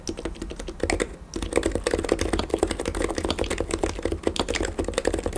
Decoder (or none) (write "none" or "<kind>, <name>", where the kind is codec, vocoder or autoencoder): none